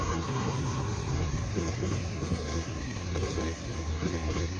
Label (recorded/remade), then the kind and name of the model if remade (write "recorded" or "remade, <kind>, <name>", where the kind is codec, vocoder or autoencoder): remade, codec, SNAC